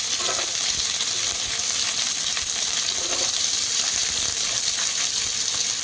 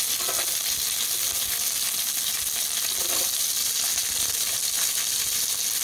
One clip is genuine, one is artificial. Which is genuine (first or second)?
second